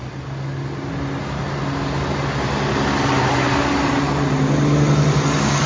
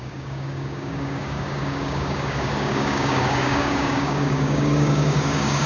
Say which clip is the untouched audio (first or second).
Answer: first